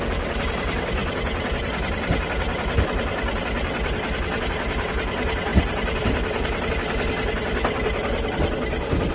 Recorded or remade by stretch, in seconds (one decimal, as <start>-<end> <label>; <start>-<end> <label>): 0.0-9.1 recorded